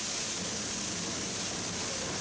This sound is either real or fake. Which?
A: real